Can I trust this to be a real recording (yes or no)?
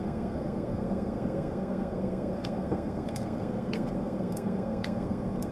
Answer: no